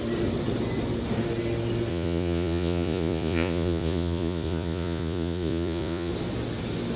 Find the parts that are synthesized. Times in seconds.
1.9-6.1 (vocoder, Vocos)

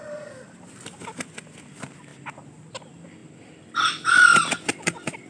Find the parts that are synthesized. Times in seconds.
none

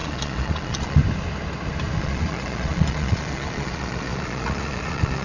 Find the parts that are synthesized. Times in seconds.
0.0-1.0 (vocoder, Vocos); 2.0-5.2